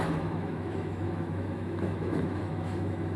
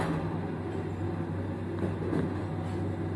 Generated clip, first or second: first